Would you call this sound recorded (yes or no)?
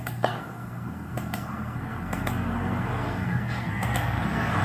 no